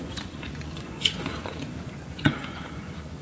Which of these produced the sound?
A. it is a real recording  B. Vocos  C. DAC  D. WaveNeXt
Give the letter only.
B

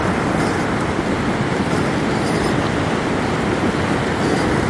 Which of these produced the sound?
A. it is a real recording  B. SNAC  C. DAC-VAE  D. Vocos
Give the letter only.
A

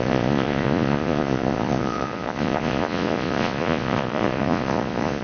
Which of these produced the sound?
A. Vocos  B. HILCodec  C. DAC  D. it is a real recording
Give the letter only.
A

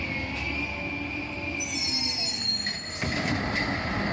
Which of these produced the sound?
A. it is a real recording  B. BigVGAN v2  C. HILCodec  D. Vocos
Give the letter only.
A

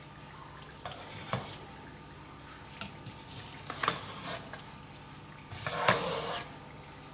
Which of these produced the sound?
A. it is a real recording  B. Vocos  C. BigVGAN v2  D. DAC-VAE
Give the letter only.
A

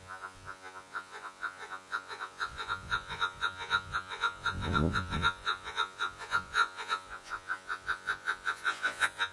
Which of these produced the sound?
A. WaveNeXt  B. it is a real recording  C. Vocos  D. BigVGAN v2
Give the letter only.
C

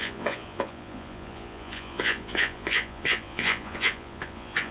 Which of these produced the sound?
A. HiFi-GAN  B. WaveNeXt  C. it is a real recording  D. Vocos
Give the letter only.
D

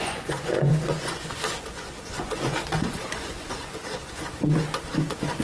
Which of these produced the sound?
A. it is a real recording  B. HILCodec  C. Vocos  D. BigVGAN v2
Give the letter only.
C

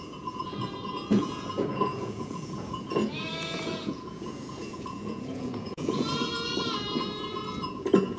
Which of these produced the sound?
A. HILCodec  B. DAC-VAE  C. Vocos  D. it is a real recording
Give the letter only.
C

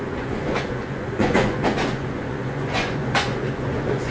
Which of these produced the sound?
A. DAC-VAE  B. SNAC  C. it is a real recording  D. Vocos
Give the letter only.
D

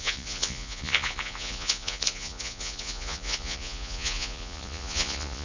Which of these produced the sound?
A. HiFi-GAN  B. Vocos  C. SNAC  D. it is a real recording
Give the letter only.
B